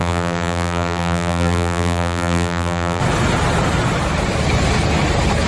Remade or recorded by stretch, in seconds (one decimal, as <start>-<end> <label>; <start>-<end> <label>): 0.0-3.0 remade; 3.0-5.5 recorded